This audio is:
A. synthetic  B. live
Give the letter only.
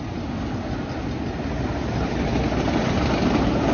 B